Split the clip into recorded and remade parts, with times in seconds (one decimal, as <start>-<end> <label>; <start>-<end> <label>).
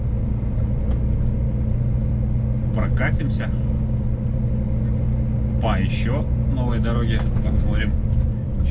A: 0.0-8.7 recorded